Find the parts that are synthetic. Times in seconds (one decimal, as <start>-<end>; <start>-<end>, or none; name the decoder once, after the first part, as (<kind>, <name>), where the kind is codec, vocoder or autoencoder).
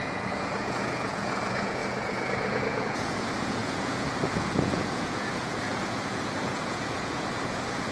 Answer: 0.0-7.9 (vocoder, Vocos)